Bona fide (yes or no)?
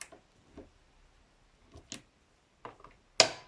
yes